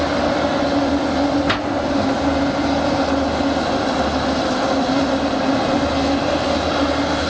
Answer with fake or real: real